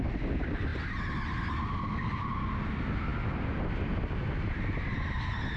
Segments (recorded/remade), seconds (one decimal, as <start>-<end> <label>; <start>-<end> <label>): 0.0-5.6 recorded